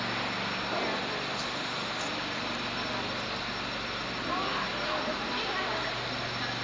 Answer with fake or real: real